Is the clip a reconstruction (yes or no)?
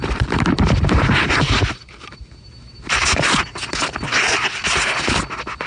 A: no